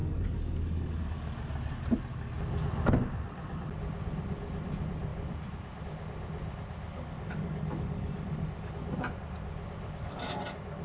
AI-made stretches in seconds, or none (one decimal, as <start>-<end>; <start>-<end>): 0.0-1.4; 6.9-8.7